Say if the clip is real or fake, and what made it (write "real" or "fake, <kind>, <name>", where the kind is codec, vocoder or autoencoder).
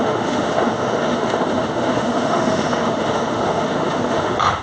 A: fake, autoencoder, DAC-VAE